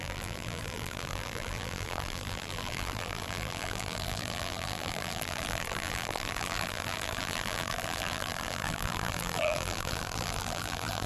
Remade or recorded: remade